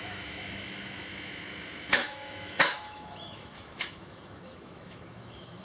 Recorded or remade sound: remade